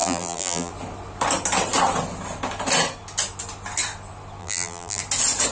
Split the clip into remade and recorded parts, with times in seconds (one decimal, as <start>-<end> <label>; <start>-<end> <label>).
0.0-0.7 remade; 0.7-4.4 recorded; 4.4-5.0 remade; 5.0-5.5 recorded